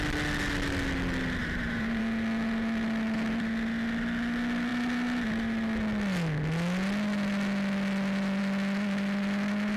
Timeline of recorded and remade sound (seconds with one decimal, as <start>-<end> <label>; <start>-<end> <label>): 0.0-1.4 recorded; 1.4-2.0 remade; 2.0-9.8 recorded